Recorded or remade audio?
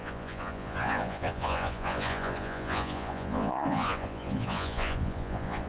remade